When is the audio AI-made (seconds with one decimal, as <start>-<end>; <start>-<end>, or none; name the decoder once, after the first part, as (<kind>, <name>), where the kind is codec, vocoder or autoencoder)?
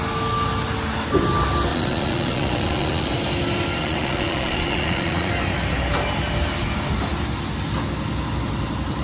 1.7-3.1 (vocoder, Vocos); 3.8-5.3